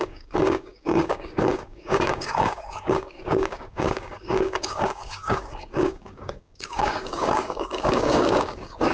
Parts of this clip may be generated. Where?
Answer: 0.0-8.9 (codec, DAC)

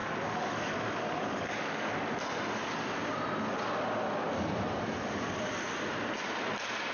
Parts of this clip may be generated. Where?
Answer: 0.0-1.9 (codec, DAC)

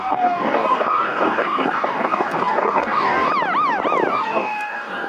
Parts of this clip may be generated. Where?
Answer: 0.0-3.3 (codec, DAC); 4.1-5.1

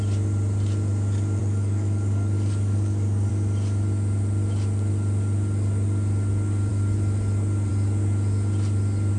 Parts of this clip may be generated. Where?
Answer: 1.4-3.3 (codec, DAC)

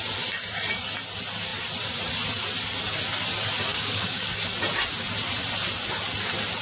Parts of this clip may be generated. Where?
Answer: 3.7-4.4 (codec, DAC)